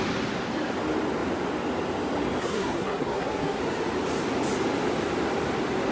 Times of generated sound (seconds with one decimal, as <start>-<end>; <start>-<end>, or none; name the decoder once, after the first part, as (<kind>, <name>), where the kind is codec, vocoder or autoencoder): 2.4-3.6 (codec, SNAC)